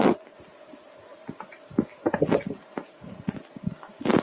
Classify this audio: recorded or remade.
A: recorded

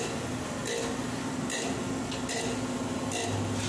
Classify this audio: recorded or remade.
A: recorded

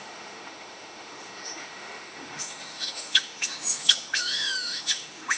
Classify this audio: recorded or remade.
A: remade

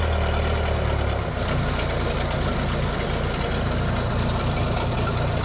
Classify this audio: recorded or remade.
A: recorded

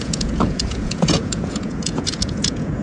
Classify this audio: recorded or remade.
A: remade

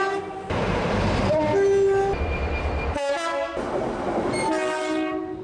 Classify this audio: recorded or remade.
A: recorded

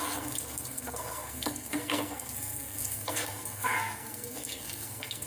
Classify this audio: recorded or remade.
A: remade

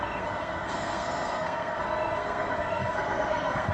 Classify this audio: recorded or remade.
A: remade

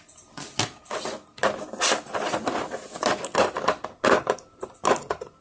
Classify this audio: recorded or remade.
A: recorded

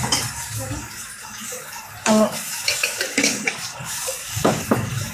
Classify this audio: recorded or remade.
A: remade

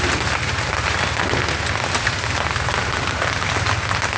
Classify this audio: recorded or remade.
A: recorded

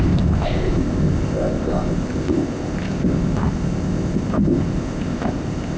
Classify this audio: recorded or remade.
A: remade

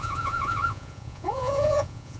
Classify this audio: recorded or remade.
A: remade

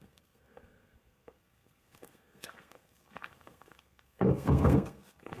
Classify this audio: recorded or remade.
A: remade